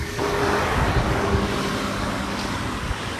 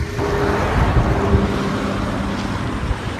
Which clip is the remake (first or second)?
first